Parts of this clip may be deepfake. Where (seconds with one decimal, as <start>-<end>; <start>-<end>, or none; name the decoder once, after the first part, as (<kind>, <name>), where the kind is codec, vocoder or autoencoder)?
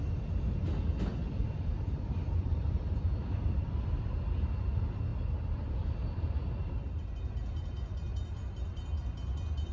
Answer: 1.2-3.1 (vocoder, BigVGAN v2); 5.1-7.1